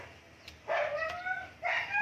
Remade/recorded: remade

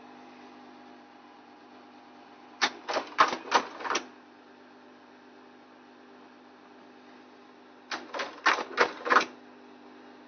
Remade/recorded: recorded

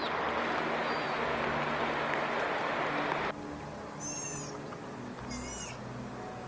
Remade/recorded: recorded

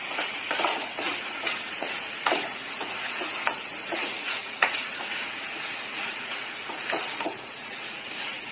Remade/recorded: remade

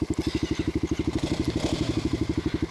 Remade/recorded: recorded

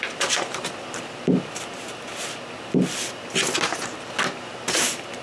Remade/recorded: recorded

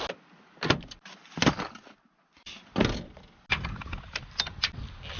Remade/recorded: recorded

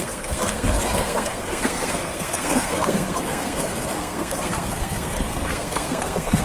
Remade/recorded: remade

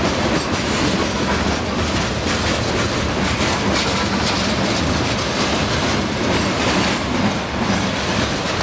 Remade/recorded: recorded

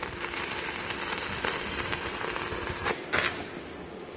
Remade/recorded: recorded